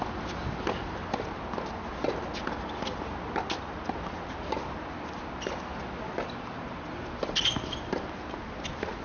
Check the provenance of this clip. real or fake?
real